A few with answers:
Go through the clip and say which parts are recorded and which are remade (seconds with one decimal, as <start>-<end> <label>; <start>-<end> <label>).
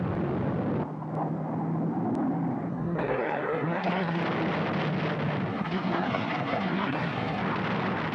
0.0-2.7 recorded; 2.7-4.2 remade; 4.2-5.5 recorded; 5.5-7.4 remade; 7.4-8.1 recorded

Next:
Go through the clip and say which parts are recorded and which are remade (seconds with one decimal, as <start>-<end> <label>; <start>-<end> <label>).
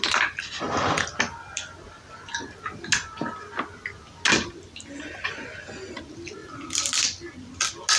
0.0-8.0 recorded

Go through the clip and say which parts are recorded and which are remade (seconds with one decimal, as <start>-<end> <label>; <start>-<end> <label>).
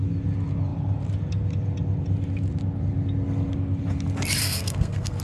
0.0-4.4 recorded; 4.4-5.2 remade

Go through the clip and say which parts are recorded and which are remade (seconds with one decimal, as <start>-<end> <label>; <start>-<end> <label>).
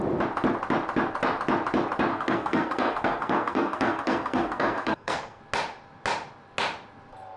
0.0-2.1 recorded; 2.1-5.4 remade; 5.4-7.4 recorded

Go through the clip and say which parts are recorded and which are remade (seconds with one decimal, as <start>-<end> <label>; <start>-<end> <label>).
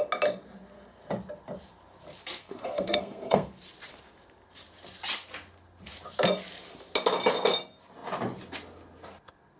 0.0-2.4 recorded; 2.4-3.5 remade; 3.5-9.6 recorded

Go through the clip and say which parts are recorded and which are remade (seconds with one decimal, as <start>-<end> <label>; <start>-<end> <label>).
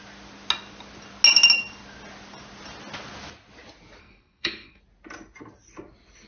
0.0-4.0 recorded; 4.0-4.8 remade; 4.8-6.3 recorded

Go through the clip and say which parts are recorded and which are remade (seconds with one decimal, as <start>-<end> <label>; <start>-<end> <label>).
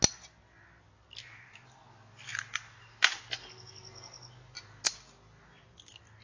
0.0-6.2 recorded